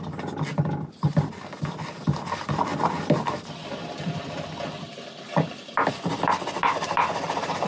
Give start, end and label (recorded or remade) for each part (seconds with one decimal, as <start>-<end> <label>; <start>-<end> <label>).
0.0-7.7 recorded